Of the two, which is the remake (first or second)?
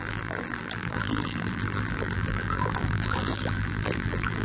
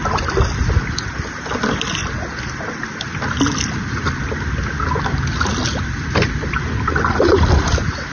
first